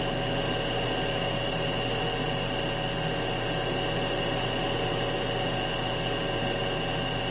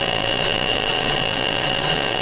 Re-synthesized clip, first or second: second